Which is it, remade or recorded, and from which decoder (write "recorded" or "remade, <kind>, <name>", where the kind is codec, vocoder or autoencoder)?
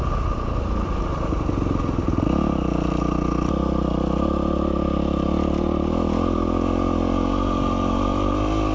recorded